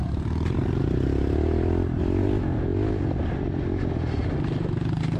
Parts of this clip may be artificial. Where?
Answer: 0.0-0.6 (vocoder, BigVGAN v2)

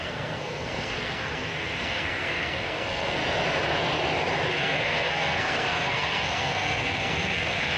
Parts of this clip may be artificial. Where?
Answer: 0.0-3.2 (codec, SNAC); 4.5-7.8

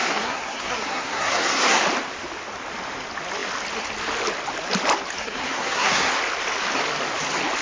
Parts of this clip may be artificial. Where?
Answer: 0.0-1.8 (codec, SNAC); 5.2-6.1

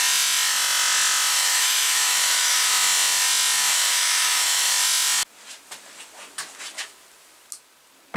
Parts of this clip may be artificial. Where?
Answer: 1.3-2.7 (autoencoder, DAC-VAE); 3.7-4.7